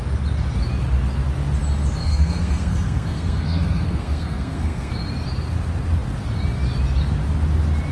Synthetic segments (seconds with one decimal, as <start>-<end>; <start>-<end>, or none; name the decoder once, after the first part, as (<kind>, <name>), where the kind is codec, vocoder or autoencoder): 2.0-4.9 (codec, SNAC)